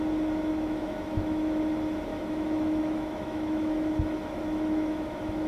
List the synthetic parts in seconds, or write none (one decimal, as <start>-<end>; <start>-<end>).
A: 0.5-1.6; 2.1-5.5

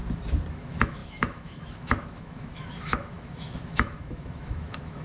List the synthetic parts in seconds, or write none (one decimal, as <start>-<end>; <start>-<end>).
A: 0.5-5.0

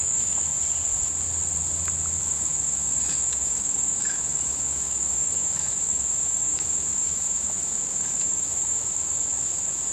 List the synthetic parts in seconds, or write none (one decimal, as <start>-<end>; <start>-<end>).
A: 0.0-0.5; 2.2-9.9

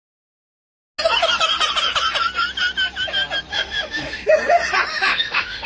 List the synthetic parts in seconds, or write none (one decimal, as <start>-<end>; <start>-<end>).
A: 3.5-4.3; 4.9-5.7